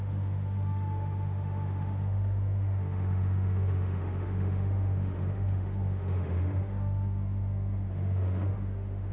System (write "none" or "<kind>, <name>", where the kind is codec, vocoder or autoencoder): autoencoder, DAC-VAE